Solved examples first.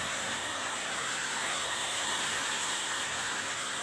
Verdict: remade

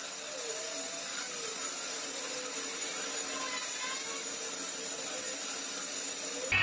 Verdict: recorded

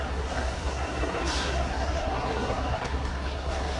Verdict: remade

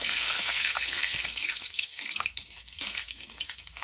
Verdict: remade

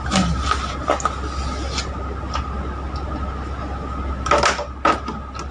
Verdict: recorded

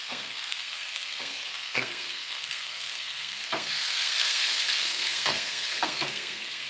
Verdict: remade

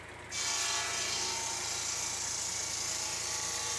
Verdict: recorded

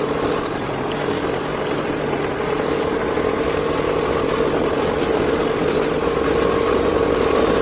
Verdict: recorded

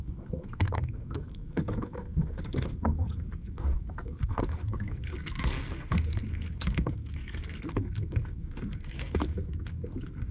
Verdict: remade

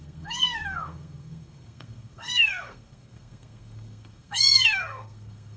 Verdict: remade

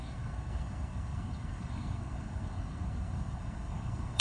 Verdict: remade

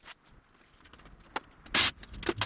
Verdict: recorded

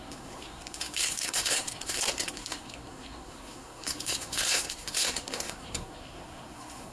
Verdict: remade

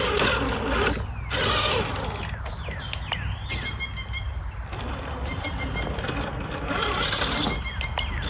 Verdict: recorded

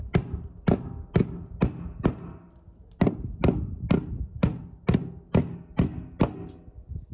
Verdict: recorded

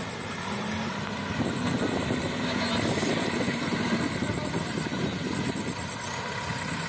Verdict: recorded